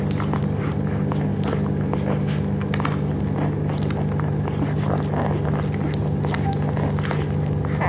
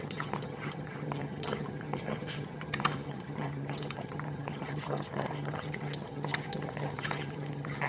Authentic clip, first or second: first